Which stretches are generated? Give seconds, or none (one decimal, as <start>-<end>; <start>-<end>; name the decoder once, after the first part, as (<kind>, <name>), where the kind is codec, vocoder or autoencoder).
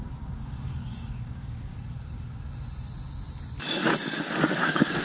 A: 0.0-1.7 (codec, DAC); 4.6-5.0